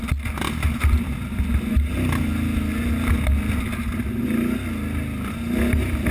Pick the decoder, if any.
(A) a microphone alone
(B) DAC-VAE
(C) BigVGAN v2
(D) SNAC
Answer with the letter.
A